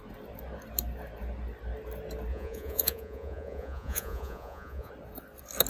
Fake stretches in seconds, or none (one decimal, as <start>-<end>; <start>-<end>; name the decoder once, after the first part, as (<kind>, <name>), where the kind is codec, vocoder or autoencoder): 2.3-4.9 (vocoder, Vocos)